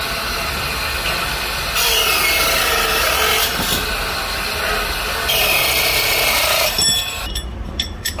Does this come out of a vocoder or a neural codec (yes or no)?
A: no